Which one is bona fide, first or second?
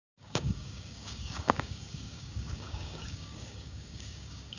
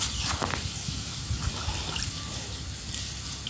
second